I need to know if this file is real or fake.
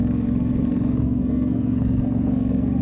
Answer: fake